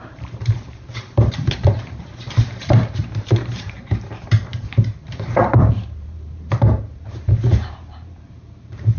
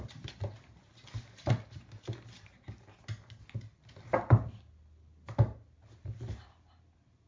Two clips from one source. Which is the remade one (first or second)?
first